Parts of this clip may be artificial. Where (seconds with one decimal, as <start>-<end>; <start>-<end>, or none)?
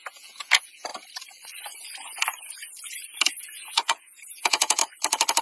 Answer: 0.0-0.9; 3.4-4.8